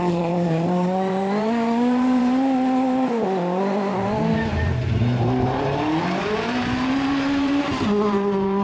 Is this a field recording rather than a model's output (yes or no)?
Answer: no